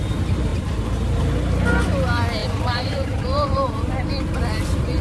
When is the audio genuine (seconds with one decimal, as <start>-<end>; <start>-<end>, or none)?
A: 0.0-0.5; 1.2-2.4; 3.9-5.0